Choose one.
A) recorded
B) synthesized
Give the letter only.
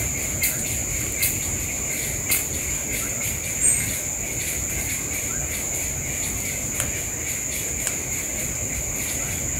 A